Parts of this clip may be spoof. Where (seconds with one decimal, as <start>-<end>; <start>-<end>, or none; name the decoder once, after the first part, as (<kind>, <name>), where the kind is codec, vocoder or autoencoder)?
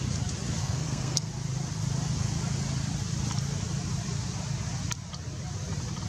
0.6-1.3 (codec, SNAC)